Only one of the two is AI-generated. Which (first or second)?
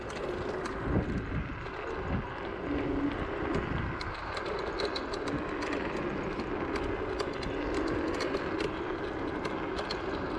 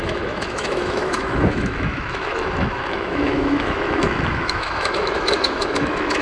second